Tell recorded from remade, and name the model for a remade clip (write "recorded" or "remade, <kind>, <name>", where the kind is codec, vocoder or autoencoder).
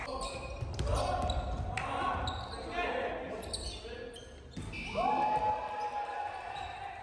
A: recorded